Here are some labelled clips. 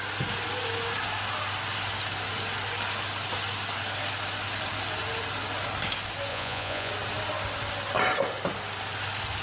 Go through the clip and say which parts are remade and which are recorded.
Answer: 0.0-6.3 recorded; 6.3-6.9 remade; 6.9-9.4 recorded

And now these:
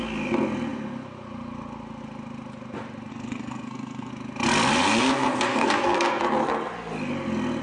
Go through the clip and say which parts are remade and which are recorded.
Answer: 0.0-3.1 recorded; 3.1-4.1 remade; 4.1-5.5 recorded; 5.5-6.2 remade; 6.2-7.6 recorded

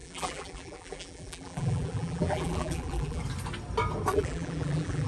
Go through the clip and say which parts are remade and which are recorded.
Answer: 0.0-3.2 remade; 3.2-4.1 recorded; 4.1-5.1 remade

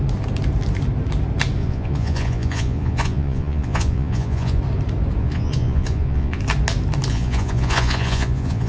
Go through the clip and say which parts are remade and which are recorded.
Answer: 0.0-1.6 recorded; 1.6-4.6 remade; 4.6-5.2 recorded; 5.2-6.4 remade; 6.4-7.1 recorded; 7.1-8.7 remade

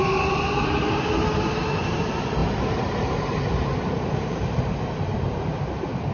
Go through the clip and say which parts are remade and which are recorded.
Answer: 0.0-2.4 recorded; 2.4-6.1 remade